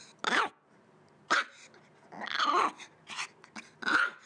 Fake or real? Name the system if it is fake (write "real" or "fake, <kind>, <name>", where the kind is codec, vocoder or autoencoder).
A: real